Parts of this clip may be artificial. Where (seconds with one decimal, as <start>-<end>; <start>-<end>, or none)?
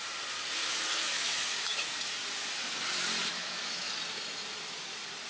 0.6-1.9; 3.3-3.9